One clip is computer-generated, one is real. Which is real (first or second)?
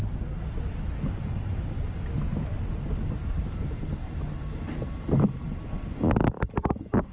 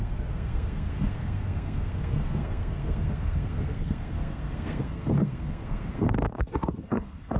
first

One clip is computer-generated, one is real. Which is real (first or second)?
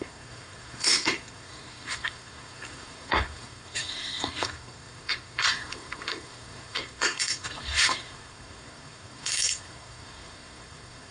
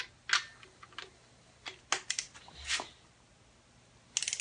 second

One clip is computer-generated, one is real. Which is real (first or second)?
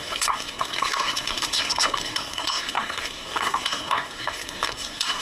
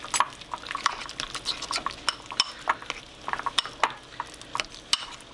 second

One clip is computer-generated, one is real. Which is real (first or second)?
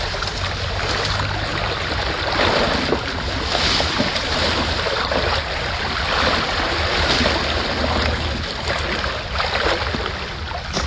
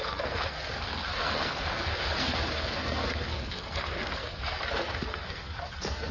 first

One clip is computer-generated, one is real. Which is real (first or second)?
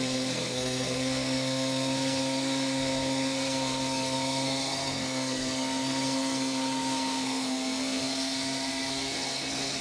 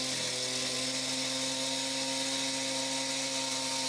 second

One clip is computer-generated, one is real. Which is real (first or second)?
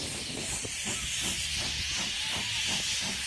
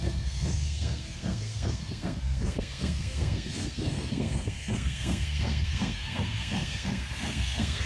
first